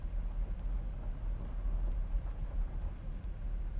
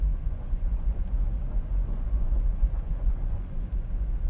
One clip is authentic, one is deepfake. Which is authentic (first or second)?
first